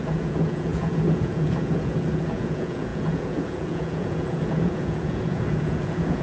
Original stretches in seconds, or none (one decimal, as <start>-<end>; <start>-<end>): none